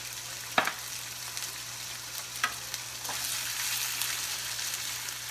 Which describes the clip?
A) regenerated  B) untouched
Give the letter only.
B